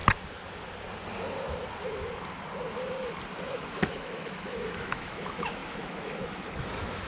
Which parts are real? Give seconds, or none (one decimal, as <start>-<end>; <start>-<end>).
0.0-3.4